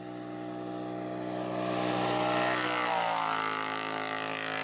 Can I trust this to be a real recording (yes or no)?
yes